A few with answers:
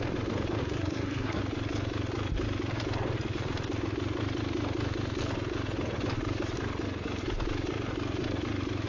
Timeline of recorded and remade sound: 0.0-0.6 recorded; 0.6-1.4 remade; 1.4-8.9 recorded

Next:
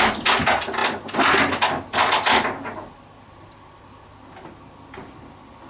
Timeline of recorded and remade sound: 0.0-5.7 recorded

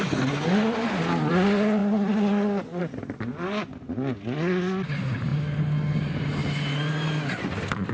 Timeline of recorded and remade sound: 0.0-7.9 recorded

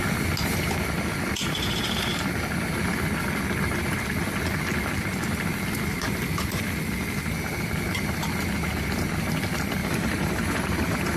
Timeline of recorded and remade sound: 0.0-9.8 recorded; 9.8-11.2 remade

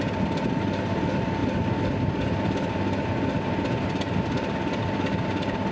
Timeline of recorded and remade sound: 0.0-5.7 recorded

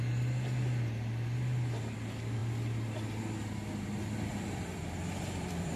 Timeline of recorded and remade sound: 0.0-4.3 recorded; 4.3-5.8 remade